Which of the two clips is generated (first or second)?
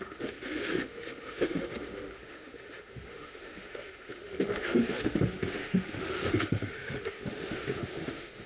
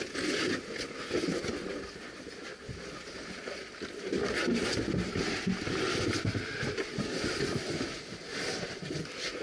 first